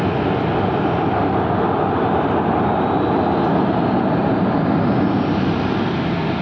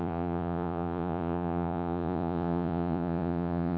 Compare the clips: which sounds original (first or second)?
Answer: first